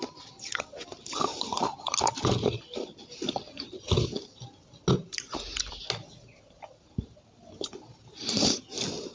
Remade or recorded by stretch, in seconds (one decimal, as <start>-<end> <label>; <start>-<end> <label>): 0.0-9.1 recorded